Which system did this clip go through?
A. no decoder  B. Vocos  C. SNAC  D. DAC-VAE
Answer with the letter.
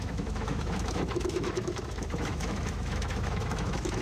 D